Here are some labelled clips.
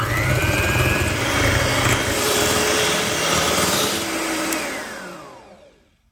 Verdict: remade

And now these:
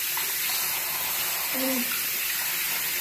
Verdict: recorded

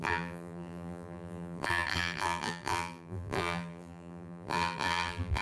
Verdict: remade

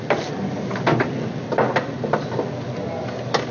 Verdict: recorded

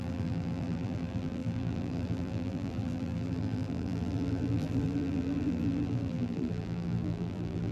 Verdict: remade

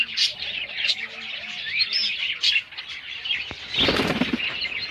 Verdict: recorded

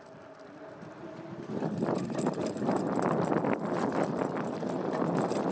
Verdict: remade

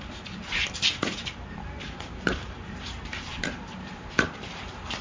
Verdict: remade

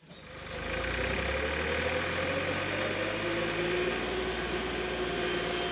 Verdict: recorded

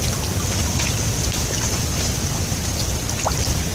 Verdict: recorded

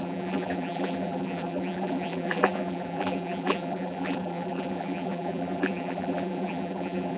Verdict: remade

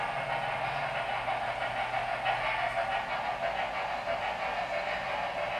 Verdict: recorded